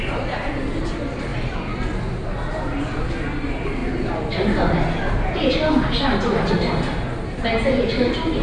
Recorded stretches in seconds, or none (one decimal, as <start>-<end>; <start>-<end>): 0.0-8.4

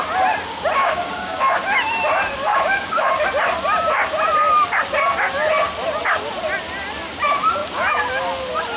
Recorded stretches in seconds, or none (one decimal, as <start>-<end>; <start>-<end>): 0.0-0.8; 1.4-2.5; 3.3-8.8

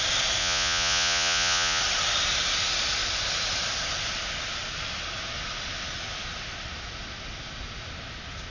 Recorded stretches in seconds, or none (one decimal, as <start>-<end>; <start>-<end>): 0.0-0.4; 1.8-8.5